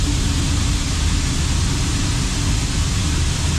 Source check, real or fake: real